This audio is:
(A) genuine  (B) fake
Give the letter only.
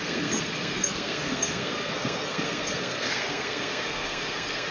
B